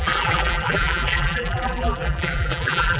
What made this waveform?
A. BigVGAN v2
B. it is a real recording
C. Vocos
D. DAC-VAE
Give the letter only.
A